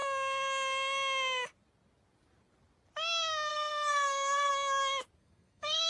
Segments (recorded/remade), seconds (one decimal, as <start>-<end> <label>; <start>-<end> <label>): 0.0-3.5 recorded; 3.5-4.5 remade; 4.5-5.2 recorded; 5.2-5.9 remade